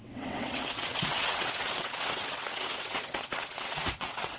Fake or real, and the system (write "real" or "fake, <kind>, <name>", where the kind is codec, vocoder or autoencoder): fake, vocoder, WaveNeXt